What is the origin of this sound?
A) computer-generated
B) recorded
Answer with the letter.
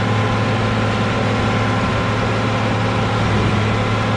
B